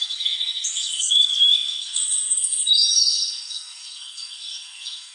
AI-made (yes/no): yes